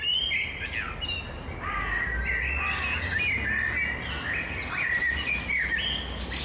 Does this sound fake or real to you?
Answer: real